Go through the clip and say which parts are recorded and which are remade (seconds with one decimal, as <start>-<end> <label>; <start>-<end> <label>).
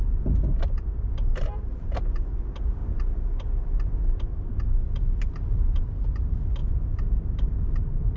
0.0-2.8 remade; 2.8-4.7 recorded; 4.7-6.6 remade; 6.6-7.5 recorded; 7.5-8.2 remade